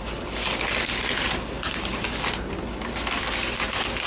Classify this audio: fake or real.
real